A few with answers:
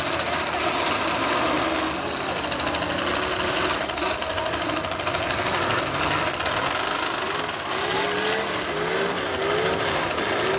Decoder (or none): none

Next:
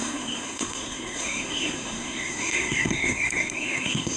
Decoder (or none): codec, SNAC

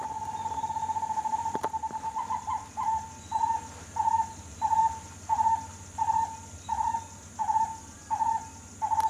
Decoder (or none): none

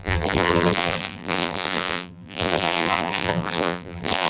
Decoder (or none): vocoder, BigVGAN v2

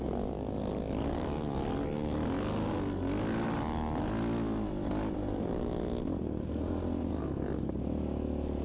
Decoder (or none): none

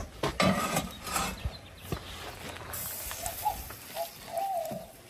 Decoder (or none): none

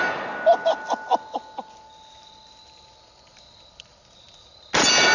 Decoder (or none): none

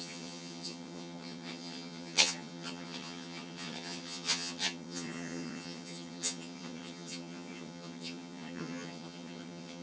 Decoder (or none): vocoder, HiFi-GAN